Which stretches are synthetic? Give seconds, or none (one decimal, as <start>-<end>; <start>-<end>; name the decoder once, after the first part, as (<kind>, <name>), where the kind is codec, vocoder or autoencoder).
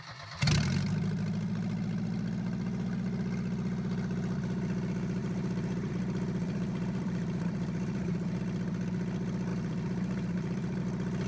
5.2-5.9 (vocoder, BigVGAN v2); 6.4-8.4; 9.5-10.8